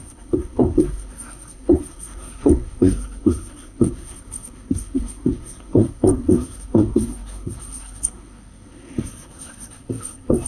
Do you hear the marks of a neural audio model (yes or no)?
yes